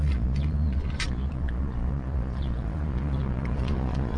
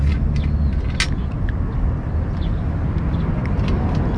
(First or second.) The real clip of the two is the second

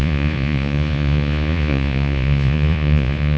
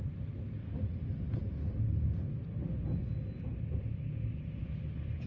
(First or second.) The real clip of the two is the second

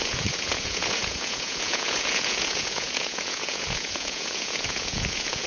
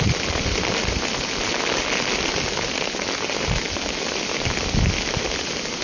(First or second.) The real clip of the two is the second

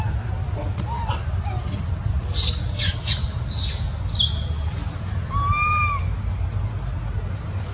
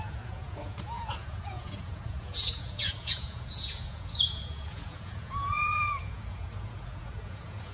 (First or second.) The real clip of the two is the first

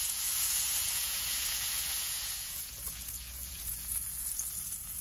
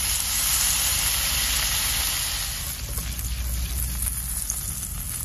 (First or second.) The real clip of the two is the second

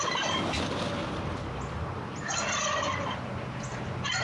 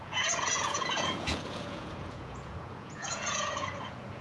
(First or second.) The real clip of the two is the first